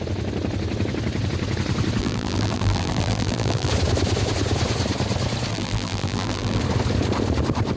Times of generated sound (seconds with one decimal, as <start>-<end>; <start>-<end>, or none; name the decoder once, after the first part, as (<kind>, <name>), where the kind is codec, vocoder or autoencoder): 2.0-3.7 (vocoder, BigVGAN v2); 5.5-6.6